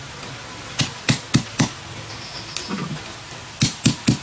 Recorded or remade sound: recorded